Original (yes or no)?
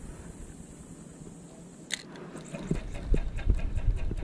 yes